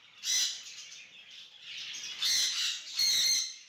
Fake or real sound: real